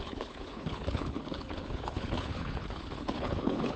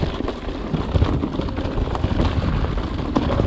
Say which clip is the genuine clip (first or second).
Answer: second